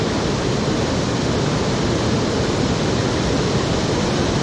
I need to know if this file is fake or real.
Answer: real